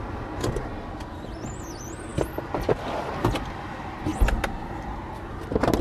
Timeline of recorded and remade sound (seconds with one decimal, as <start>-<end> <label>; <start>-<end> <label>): 0.0-5.8 recorded